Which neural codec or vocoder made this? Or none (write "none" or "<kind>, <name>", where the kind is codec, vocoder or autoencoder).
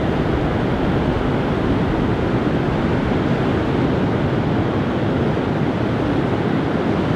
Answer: none